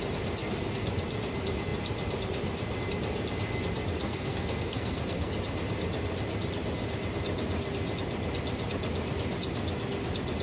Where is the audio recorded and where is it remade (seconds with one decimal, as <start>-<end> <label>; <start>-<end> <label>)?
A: 0.0-0.4 recorded; 0.4-0.9 remade; 0.9-4.0 recorded; 4.0-5.3 remade; 5.3-10.4 recorded